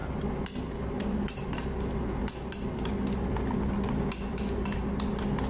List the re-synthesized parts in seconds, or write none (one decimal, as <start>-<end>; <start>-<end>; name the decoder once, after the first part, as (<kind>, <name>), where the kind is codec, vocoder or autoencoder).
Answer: none